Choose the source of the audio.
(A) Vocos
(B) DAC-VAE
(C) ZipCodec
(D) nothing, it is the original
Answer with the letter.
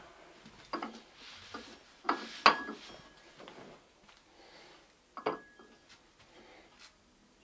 D